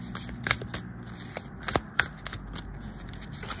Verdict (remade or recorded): recorded